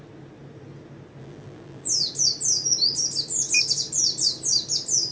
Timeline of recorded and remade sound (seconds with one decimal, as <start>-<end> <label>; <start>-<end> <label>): 0.0-1.2 recorded; 1.2-1.9 remade; 1.9-5.1 recorded